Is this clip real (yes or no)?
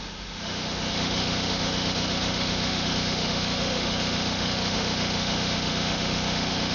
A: no